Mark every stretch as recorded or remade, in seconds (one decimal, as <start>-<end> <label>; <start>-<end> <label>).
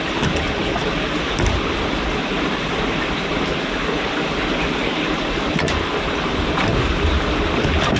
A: 0.0-8.0 recorded